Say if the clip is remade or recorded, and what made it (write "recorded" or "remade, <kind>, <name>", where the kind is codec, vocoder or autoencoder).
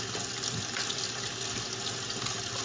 recorded